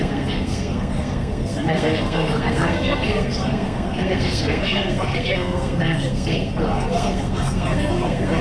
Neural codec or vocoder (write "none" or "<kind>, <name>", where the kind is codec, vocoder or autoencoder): codec, SNAC